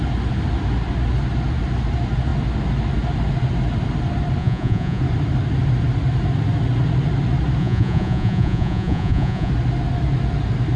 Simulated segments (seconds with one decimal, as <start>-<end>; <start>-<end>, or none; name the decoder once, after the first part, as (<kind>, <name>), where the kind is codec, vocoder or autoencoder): 4.4-5.0 (vocoder, Vocos); 7.6-9.5